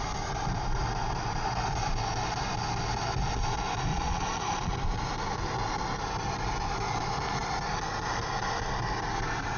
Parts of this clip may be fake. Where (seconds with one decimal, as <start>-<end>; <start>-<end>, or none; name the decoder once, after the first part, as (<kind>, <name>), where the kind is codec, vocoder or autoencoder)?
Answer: 3.9-4.7 (vocoder, Vocos)